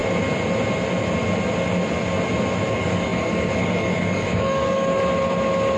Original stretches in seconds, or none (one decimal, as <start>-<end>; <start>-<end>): 0.0-2.7; 5.0-5.8